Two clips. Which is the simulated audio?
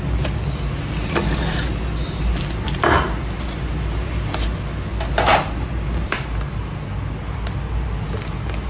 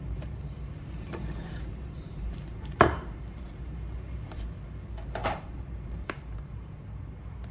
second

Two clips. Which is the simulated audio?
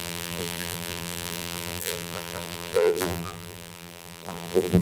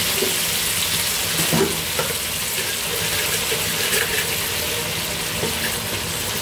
first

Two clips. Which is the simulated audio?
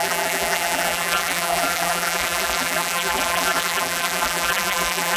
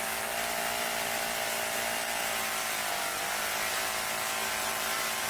first